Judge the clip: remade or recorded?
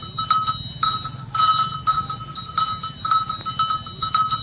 recorded